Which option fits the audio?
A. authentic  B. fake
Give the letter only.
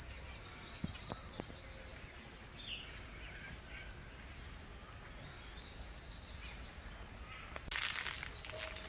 A